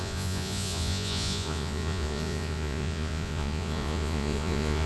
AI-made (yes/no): yes